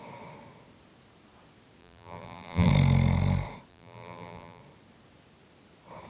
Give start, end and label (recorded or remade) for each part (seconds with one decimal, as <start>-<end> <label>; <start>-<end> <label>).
0.0-1.8 recorded; 1.8-2.7 remade; 2.7-3.7 recorded; 3.7-4.6 remade; 4.6-6.1 recorded